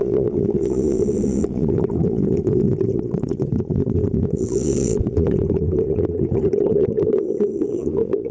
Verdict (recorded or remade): remade